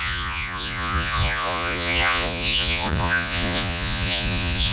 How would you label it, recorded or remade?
remade